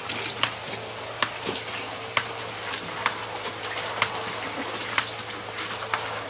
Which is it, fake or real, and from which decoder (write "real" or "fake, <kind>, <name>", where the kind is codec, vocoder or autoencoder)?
real